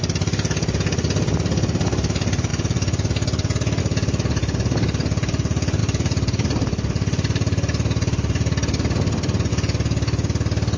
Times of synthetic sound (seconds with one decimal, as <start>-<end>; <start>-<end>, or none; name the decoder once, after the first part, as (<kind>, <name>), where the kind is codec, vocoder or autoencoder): 5.8-9.5 (vocoder, BigVGAN v2)